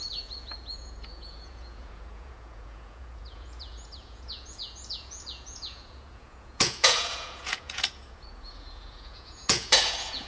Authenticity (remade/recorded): remade